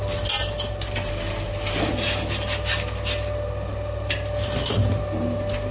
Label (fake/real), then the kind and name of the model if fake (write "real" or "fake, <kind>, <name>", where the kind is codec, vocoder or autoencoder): real